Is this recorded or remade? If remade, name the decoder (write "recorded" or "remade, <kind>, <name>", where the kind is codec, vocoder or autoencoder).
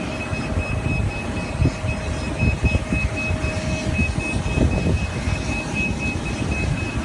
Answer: recorded